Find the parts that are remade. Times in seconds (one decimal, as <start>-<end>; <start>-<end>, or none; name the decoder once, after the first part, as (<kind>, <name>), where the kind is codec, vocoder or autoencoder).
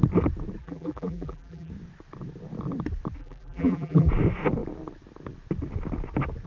0.6-1.7 (vocoder, BigVGAN v2); 3.2-4.1